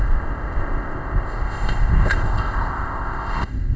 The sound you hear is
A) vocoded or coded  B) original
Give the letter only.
A